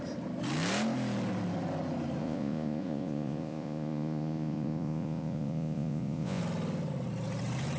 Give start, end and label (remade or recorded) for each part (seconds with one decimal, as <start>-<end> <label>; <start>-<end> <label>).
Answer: 0.0-2.2 recorded; 2.2-6.4 remade; 6.4-7.8 recorded